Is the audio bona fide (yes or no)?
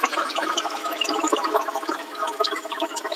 no